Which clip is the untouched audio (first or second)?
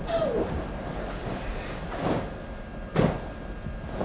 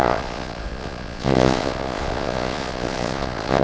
first